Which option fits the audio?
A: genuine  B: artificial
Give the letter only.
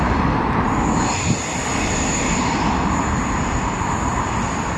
A